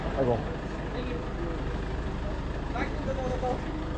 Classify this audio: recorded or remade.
recorded